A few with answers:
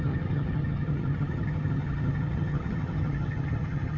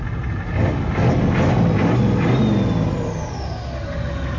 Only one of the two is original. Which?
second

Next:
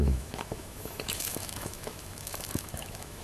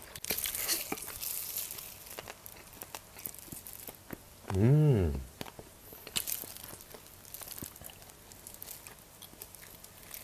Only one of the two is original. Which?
second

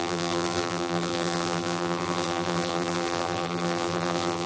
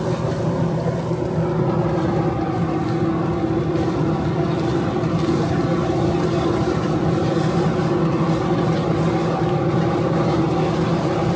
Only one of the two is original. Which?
second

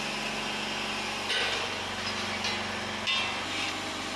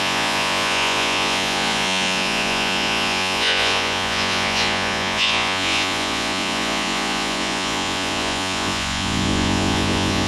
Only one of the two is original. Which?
first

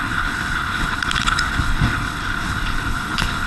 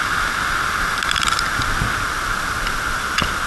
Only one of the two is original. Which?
second